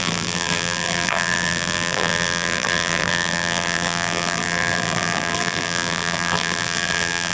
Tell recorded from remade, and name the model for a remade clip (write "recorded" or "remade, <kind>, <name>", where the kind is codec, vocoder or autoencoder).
remade, vocoder, BigVGAN v2